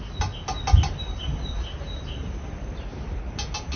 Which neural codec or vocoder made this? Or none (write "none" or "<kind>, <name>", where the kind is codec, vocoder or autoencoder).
none